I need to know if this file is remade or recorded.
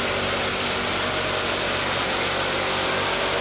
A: recorded